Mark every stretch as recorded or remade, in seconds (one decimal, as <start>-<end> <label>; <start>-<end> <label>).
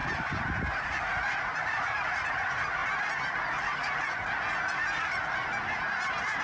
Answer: 0.0-0.8 recorded; 0.8-2.8 remade; 2.8-3.6 recorded; 3.6-5.4 remade; 5.4-6.4 recorded